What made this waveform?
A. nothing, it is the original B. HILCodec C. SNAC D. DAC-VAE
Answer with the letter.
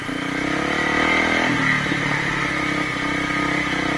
A